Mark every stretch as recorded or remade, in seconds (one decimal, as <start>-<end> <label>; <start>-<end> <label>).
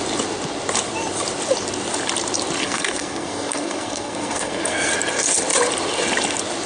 0.0-2.6 recorded; 2.6-4.9 remade; 4.9-6.7 recorded